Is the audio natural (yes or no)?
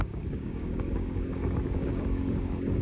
no